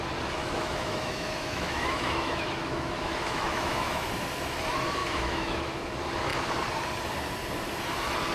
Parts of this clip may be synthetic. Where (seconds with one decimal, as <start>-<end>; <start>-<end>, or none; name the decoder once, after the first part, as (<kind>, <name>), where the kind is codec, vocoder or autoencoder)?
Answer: 0.4-4.1 (autoencoder, DAC-VAE); 5.0-5.8